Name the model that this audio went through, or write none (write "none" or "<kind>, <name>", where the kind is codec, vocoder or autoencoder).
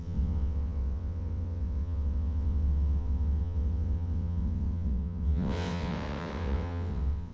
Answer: vocoder, WaveNeXt